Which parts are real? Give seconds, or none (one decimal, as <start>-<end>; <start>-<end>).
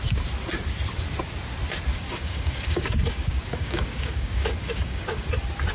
0.0-1.9; 5.3-5.7